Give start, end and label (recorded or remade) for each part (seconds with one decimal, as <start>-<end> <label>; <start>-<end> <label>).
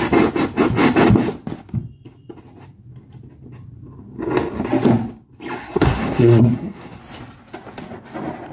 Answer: 0.0-5.6 recorded; 5.6-7.0 remade; 7.0-8.5 recorded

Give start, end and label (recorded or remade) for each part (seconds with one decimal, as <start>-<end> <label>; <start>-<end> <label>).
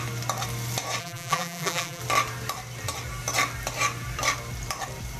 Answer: 0.0-1.0 recorded; 1.0-2.0 remade; 2.0-5.2 recorded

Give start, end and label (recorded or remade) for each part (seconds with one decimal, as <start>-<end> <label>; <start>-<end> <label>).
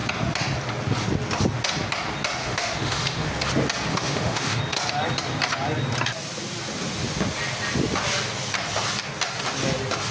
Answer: 0.0-2.4 recorded; 2.4-3.3 remade; 3.3-3.9 recorded; 3.9-4.6 remade; 4.6-10.1 recorded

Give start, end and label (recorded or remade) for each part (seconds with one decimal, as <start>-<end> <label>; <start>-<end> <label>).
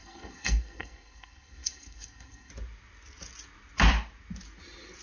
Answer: 0.0-2.5 remade; 2.5-5.0 recorded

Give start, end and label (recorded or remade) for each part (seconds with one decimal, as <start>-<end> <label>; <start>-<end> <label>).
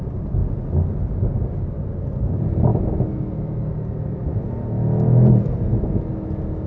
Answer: 0.0-0.4 remade; 0.4-1.6 recorded; 1.6-2.7 remade; 2.7-6.7 recorded